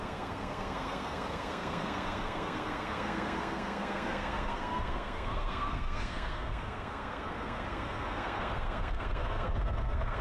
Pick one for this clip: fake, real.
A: fake